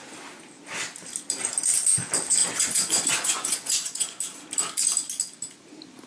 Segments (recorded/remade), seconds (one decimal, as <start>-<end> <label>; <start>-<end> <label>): 0.0-2.4 recorded; 2.4-4.2 remade; 4.2-6.1 recorded